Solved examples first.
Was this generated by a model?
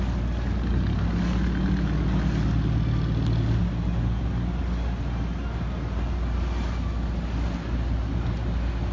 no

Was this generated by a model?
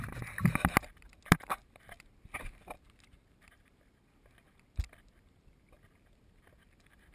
no